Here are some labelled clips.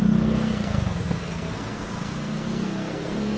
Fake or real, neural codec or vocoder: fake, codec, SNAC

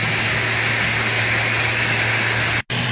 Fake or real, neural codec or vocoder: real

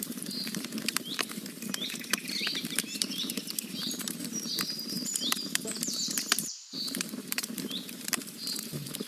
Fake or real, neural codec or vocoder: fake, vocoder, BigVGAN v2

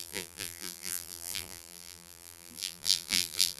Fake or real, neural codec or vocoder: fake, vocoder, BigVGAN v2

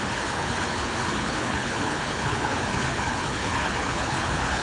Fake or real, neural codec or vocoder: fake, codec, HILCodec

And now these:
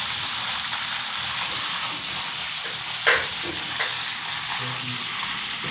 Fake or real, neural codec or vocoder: real